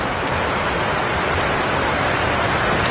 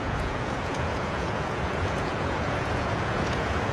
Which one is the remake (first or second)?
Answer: second